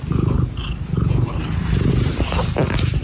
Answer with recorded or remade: recorded